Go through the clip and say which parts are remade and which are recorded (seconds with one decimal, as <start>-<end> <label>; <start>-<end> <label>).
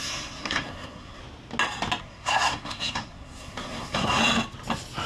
0.0-1.2 remade; 1.2-2.0 recorded; 2.0-4.2 remade; 4.2-5.1 recorded